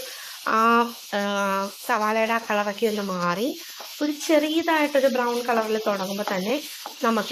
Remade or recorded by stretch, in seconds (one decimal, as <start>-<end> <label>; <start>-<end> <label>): 0.0-0.5 recorded; 0.5-4.2 remade; 4.2-6.5 recorded; 6.5-7.3 remade